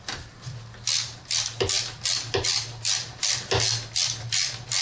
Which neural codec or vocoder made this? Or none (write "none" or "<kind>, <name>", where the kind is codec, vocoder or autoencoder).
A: none